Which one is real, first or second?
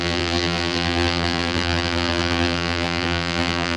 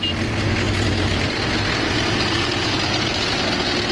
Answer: second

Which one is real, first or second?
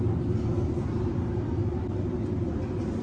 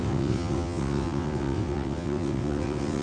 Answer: first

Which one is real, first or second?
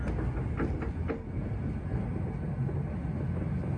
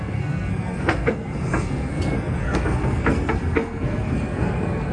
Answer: first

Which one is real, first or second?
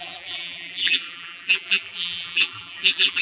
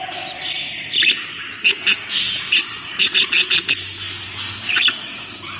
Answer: second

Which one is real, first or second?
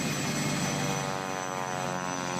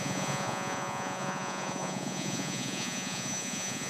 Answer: first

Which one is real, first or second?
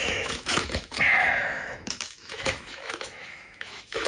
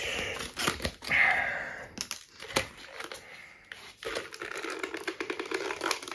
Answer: second